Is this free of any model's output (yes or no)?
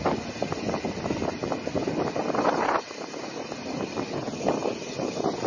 yes